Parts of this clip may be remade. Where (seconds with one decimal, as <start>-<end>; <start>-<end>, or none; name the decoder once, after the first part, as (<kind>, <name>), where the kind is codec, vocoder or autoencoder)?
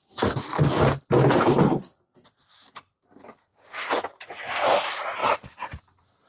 none